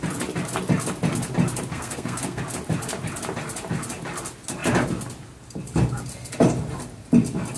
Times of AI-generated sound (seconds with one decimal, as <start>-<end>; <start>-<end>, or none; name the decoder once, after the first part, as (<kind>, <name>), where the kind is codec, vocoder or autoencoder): 1.7-2.4 (codec, SNAC)